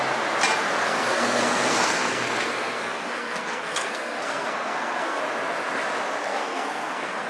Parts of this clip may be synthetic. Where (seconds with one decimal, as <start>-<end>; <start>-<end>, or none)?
0.8-5.2; 6.3-7.3